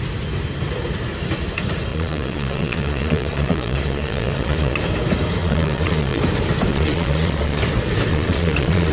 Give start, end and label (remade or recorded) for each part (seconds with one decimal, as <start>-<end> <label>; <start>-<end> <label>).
0.0-1.9 recorded; 1.9-4.8 remade; 4.8-5.4 recorded; 5.4-6.2 remade; 6.2-6.7 recorded; 6.7-7.6 remade; 7.6-8.1 recorded; 8.1-8.9 remade